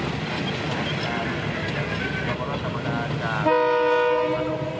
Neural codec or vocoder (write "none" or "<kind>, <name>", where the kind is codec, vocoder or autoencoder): none